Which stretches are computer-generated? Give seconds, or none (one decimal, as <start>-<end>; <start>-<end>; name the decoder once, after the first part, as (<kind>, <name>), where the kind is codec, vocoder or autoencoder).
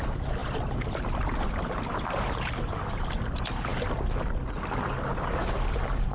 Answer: none